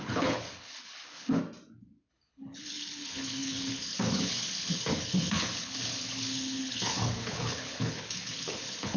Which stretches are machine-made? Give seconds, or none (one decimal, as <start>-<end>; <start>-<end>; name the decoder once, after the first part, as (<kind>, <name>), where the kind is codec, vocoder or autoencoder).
0.0-1.4 (codec, HILCodec); 2.1-9.0